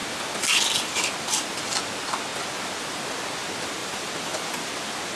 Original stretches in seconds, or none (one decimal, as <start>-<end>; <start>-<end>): 0.0-3.8; 4.7-5.2